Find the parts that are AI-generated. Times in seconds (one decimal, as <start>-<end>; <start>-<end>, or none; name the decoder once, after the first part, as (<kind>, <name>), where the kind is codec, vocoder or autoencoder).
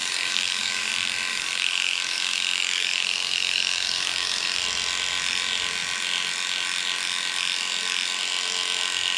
0.0-0.9 (codec, DAC); 1.3-4.6